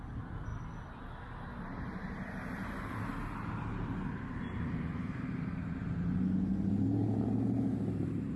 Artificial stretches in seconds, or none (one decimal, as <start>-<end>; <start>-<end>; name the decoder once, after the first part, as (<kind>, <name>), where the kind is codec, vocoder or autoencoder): 0.0-0.5 (vocoder, BigVGAN v2); 1.6-3.1; 3.6-8.4